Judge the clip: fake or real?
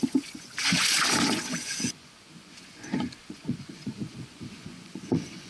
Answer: fake